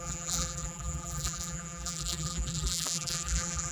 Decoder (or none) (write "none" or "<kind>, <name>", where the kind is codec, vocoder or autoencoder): vocoder, BigVGAN v2